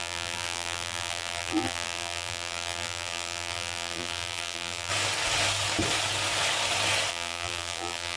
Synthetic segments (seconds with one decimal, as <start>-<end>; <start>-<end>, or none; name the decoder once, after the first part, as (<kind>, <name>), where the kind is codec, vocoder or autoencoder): 0.0-4.9 (vocoder, BigVGAN v2); 7.1-8.2